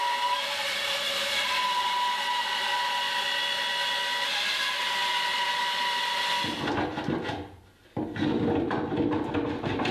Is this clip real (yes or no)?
yes